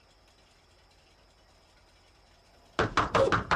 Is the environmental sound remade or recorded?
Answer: recorded